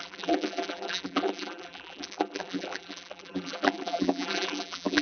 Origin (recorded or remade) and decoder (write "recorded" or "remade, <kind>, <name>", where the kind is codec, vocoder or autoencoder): remade, vocoder, BigVGAN v2